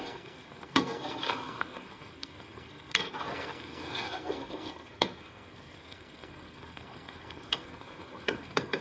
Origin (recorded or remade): remade